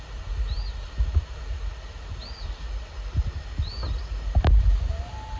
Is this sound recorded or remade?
recorded